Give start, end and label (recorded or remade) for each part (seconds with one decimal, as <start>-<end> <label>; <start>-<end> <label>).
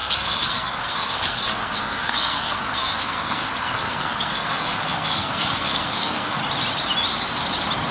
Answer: 0.0-6.4 remade; 6.4-7.9 recorded